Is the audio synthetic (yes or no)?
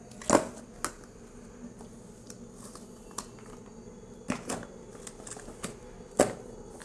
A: no